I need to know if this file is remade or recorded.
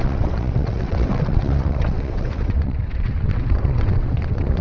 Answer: remade